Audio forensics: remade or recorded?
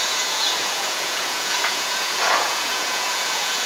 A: remade